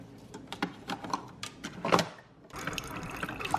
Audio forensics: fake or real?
real